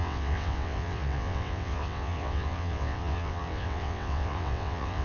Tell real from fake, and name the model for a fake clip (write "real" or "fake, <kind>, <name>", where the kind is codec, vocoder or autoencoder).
fake, vocoder, WaveNeXt